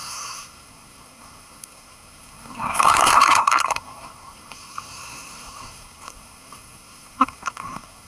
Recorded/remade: remade